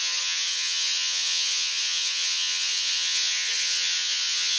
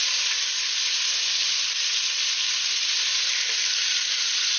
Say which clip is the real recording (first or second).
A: second